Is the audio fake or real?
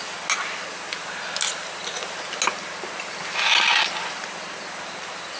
real